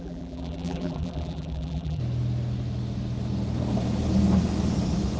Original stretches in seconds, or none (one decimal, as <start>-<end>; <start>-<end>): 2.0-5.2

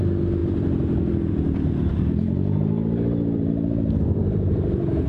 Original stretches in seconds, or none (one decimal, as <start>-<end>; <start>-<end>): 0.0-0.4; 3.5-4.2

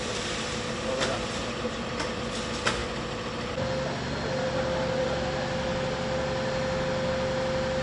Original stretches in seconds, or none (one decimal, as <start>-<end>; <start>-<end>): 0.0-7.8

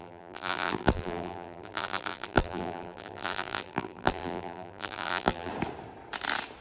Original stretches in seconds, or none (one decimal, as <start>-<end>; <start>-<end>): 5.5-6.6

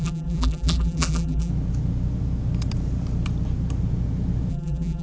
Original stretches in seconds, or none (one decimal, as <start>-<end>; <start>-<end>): 1.5-4.5

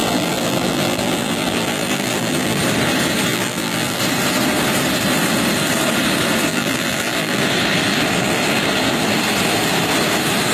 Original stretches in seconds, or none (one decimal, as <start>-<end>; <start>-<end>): 2.6-3.3; 4.0-6.5; 7.4-10.5

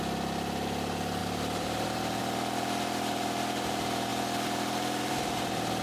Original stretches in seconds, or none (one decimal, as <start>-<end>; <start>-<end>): 0.0-1.2; 2.2-5.8